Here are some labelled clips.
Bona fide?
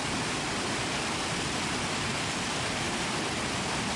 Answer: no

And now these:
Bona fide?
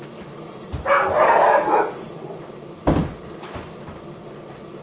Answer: yes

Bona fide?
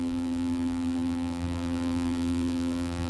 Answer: no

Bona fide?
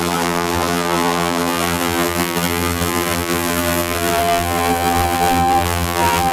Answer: no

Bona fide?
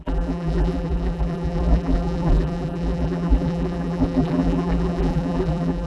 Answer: no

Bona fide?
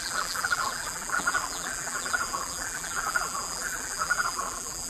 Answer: no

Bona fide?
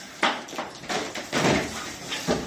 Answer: no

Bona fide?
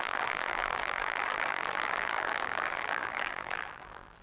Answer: no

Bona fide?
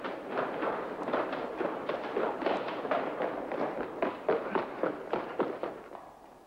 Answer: no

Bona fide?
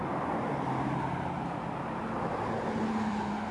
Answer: no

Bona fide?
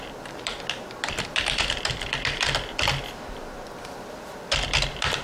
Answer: no